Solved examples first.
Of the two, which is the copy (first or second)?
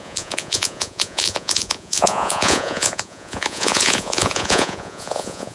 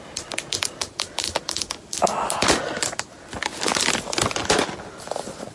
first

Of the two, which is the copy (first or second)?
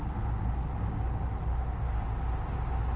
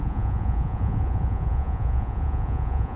second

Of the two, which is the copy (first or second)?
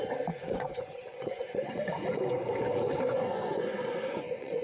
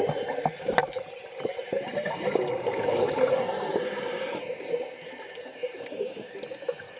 first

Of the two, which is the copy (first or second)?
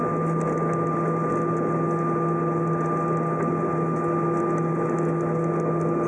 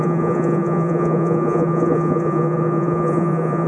second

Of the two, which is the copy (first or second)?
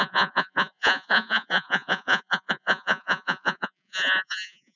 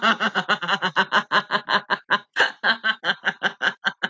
first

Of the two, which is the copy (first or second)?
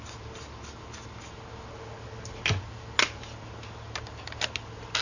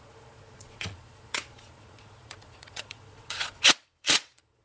second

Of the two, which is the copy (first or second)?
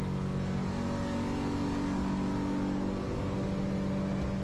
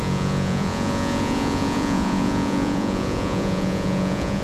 second